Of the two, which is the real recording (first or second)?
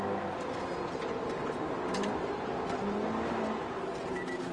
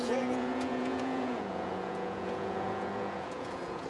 first